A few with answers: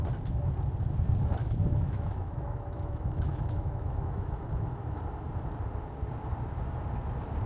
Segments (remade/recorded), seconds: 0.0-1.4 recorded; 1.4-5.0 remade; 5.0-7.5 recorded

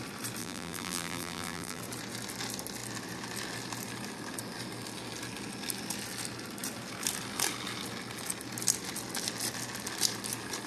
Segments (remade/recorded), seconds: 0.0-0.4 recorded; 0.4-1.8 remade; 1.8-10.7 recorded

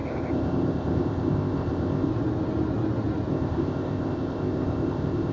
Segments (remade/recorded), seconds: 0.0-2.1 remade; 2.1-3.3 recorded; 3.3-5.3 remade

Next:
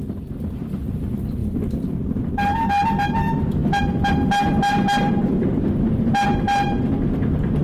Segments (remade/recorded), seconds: 0.0-1.4 recorded; 1.4-2.2 remade; 2.2-7.6 recorded

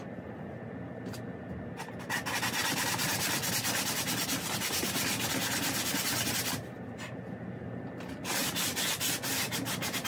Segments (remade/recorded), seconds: 0.0-10.1 recorded

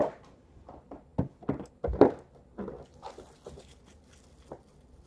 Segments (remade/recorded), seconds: 0.0-5.1 recorded

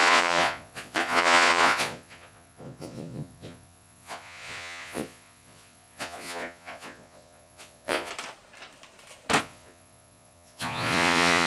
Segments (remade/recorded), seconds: 0.0-8.1 remade; 8.1-9.4 recorded; 9.4-11.5 remade